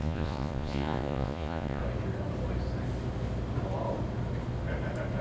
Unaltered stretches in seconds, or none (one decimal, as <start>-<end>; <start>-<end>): 1.8-5.2